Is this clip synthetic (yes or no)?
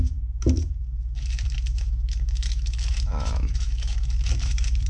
yes